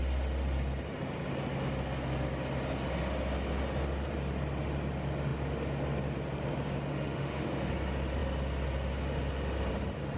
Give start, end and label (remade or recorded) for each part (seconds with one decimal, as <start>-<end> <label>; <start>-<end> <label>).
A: 0.0-6.9 recorded; 6.9-7.7 remade; 7.7-10.2 recorded